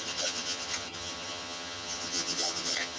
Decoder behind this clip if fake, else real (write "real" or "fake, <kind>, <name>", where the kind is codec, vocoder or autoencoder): fake, vocoder, HiFi-GAN